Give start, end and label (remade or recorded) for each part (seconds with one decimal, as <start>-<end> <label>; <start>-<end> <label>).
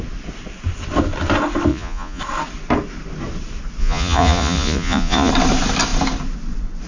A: 0.0-1.7 recorded; 1.7-2.2 remade; 2.2-3.8 recorded; 3.8-5.3 remade; 5.3-6.9 recorded